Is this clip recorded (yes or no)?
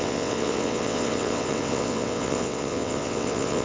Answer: no